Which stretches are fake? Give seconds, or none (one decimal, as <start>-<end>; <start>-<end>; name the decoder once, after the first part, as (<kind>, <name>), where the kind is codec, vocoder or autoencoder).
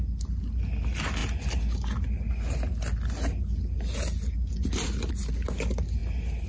none